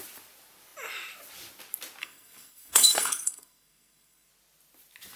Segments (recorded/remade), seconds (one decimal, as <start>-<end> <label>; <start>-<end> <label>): 0.0-2.0 recorded; 2.0-4.3 remade; 4.3-5.2 recorded